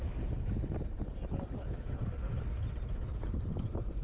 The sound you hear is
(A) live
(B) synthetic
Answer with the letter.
A